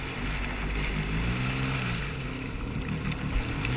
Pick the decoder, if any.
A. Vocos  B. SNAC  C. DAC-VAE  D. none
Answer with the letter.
D